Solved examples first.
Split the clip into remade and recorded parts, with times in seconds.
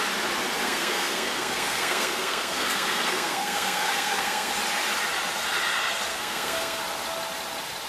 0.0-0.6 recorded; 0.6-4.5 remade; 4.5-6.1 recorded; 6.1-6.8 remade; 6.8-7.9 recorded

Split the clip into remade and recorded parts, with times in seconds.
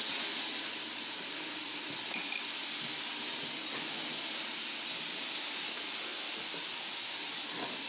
0.0-7.9 recorded